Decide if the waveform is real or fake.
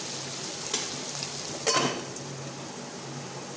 real